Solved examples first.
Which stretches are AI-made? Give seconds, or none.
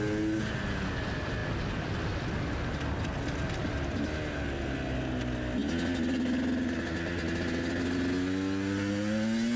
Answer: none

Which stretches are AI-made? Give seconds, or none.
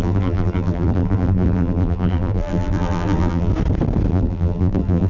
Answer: 0.0-3.5 (vocoder, BigVGAN v2); 4.1-5.1